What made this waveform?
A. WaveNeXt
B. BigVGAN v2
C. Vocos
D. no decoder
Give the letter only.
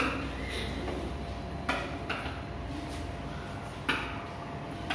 D